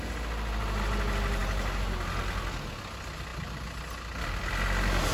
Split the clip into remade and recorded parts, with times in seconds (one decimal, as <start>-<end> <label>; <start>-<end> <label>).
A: 0.0-5.1 recorded